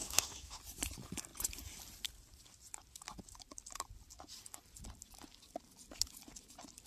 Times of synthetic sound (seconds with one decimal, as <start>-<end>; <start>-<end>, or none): 0.0-0.6